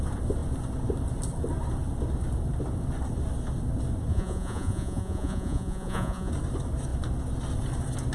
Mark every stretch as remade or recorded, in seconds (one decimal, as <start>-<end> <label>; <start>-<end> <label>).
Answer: 0.0-4.1 recorded; 4.1-6.3 remade; 6.3-8.1 recorded